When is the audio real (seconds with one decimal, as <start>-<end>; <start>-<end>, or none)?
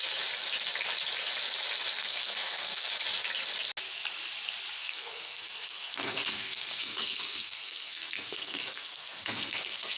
0.0-2.0; 2.9-4.8